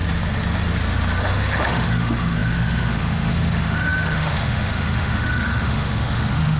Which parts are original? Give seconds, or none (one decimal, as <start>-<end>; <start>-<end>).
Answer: 0.0-1.2